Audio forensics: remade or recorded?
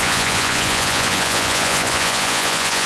remade